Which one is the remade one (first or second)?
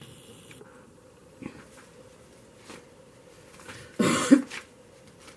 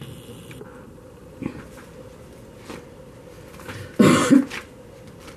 first